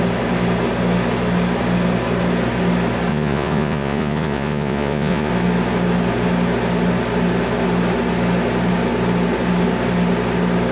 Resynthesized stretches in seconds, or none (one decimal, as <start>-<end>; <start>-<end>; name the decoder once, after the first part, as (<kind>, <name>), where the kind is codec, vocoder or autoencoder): 3.1-5.3 (vocoder, Vocos)